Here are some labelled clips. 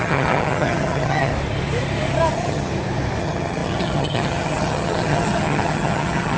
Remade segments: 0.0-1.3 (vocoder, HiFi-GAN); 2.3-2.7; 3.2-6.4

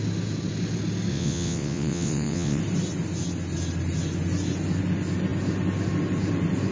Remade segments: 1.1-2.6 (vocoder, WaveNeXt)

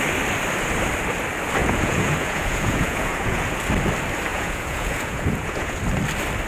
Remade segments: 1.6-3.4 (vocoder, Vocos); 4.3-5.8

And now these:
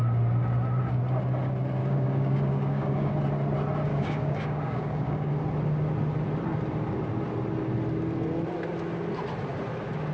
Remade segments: 1.8-3.1 (codec, DAC); 3.9-5.3

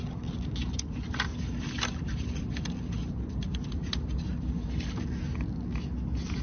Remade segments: 1.3-5.1 (vocoder, BigVGAN v2)

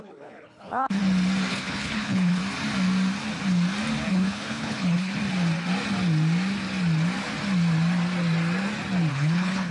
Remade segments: 0.0-1.0 (codec, HILCodec); 1.5-2.4; 4.1-5.2; 9.1-9.7

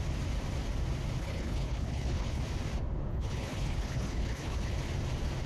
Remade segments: 1.2-2.4 (codec, HILCodec); 3.1-4.7